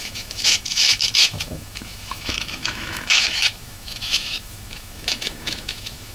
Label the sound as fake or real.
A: fake